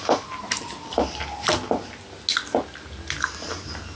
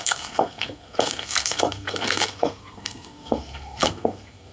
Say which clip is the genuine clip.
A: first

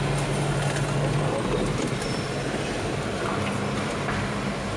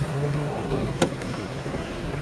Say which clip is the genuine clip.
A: first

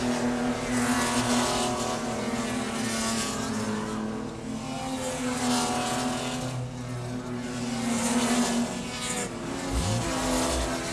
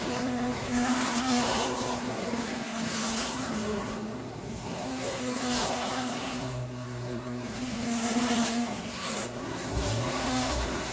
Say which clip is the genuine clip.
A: first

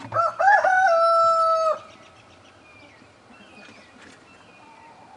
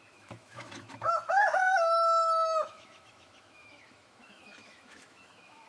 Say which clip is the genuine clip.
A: first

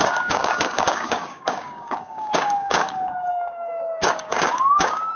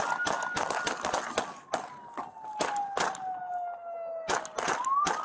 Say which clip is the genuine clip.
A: second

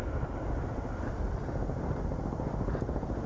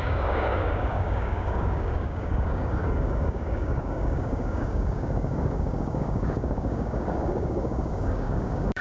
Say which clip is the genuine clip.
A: first